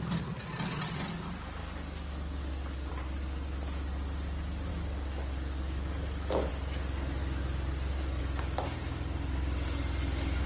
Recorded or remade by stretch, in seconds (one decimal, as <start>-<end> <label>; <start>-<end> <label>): 0.0-1.6 recorded; 1.6-2.9 remade; 2.9-4.7 recorded; 4.7-6.5 remade; 6.5-7.2 recorded; 7.2-8.2 remade; 8.2-10.5 recorded